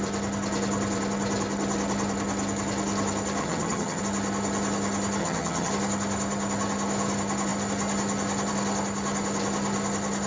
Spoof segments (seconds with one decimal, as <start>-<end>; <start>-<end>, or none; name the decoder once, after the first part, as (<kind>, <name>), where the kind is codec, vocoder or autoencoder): 3.4-4.0 (vocoder, HiFi-GAN); 5.2-5.7